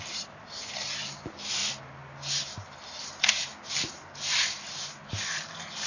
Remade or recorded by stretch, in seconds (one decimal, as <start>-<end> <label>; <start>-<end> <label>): 0.0-5.9 recorded